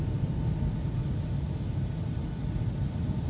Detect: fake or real real